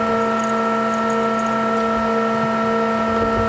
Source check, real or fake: real